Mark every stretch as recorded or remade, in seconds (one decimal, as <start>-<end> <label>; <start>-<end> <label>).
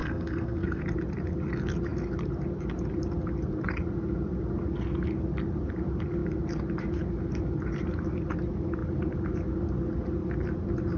0.0-0.8 remade; 0.8-11.0 recorded